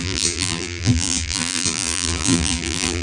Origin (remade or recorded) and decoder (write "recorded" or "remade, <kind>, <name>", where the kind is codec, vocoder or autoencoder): remade, vocoder, BigVGAN v2